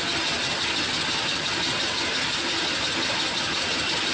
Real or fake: real